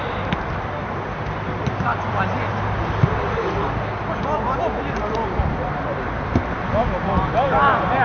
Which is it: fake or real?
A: fake